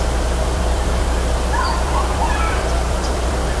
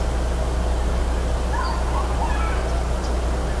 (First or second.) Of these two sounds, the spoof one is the first